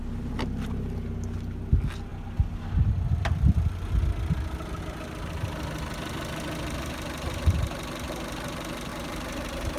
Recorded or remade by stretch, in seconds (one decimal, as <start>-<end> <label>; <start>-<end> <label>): 0.0-8.9 recorded; 8.9-9.8 remade